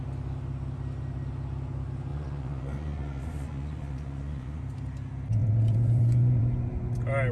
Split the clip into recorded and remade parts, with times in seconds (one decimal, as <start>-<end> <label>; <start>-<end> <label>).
0.0-2.1 recorded; 2.1-4.6 remade; 4.6-5.4 recorded; 5.4-6.7 remade; 6.7-7.3 recorded